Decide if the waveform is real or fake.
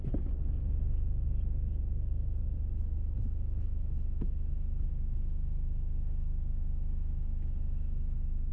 real